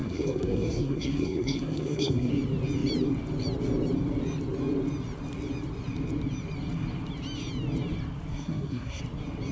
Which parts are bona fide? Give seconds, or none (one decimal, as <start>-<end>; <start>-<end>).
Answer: 2.3-8.3; 9.0-9.5